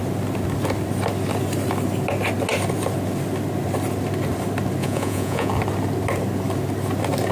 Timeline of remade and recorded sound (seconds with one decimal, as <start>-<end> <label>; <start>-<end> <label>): 0.0-4.8 recorded; 4.8-5.5 remade; 5.5-7.3 recorded